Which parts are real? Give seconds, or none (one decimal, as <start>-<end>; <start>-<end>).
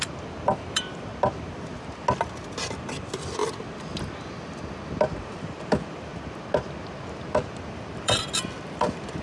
1.1-2.6; 3.4-5.2; 6.1-7.7